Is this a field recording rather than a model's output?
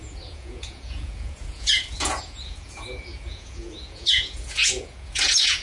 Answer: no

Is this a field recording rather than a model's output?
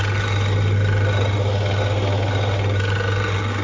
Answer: yes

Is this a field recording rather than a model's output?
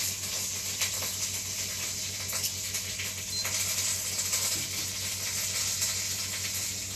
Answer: yes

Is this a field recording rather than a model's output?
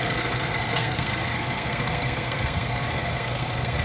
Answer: no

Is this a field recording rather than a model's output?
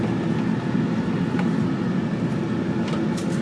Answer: yes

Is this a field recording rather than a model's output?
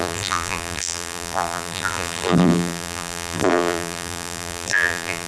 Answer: no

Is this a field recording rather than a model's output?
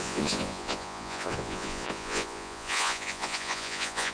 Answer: no